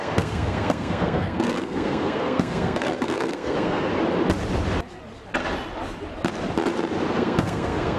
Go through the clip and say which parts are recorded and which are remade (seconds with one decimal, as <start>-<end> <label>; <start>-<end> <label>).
0.0-3.9 remade; 3.9-7.1 recorded; 7.1-8.0 remade